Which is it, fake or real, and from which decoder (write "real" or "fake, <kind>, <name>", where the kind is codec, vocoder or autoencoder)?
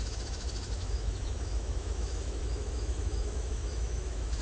fake, autoencoder, DAC-VAE